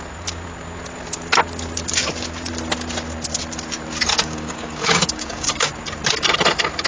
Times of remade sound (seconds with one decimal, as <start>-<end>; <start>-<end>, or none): 4.1-5.7